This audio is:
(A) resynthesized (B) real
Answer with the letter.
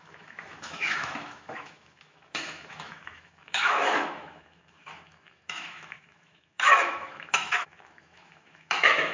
A